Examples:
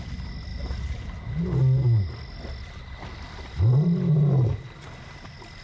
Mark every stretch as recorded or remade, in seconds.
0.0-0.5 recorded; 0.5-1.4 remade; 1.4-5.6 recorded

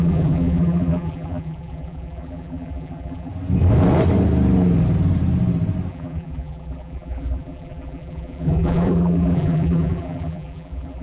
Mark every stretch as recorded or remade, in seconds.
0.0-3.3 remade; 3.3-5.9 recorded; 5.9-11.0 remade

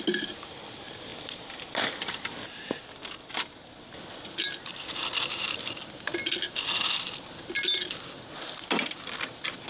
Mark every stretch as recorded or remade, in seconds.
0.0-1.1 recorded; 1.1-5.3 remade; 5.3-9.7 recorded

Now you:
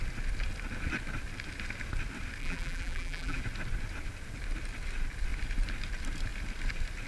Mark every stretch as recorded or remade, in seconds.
0.0-2.4 recorded; 2.4-3.4 remade; 3.4-7.1 recorded

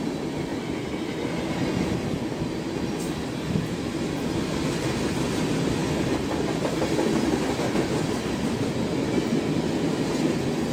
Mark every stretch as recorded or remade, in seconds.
0.0-10.7 recorded

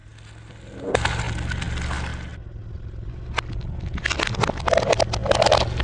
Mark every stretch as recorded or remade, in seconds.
0.0-5.8 recorded